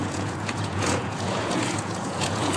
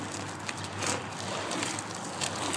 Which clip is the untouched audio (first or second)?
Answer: second